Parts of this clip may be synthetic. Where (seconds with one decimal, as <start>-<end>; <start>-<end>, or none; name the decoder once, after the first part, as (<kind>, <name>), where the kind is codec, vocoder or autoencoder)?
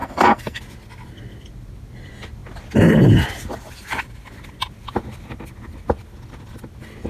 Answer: 0.0-0.6 (codec, SNAC)